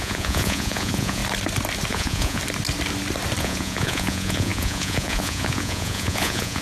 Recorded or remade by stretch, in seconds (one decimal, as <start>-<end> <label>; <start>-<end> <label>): 0.0-1.2 remade; 1.2-1.9 recorded; 1.9-2.4 remade; 2.4-3.4 recorded; 3.4-6.6 remade